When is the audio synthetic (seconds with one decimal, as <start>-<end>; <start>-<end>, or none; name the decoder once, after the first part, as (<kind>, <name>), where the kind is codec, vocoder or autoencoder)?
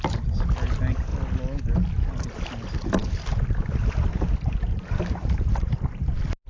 3.0-3.6 (vocoder, BigVGAN v2); 4.1-6.1